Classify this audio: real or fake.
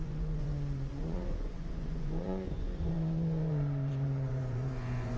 fake